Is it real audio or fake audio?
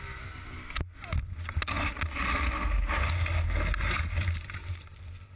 real